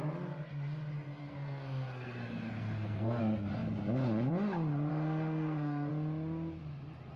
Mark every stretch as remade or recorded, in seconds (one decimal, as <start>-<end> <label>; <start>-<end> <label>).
0.0-1.2 recorded; 1.2-3.2 remade; 3.2-4.9 recorded; 4.9-5.9 remade; 5.9-7.2 recorded